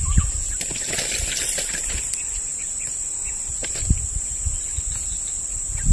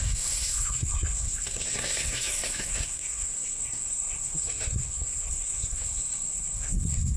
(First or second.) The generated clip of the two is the second